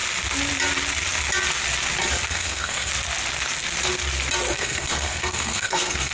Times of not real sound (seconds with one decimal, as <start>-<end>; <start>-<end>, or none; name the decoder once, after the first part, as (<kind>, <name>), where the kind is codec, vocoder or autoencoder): 2.3-2.9 (codec, SNAC); 4.5-6.1